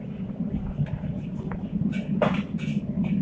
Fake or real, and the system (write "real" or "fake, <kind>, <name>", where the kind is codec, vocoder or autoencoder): real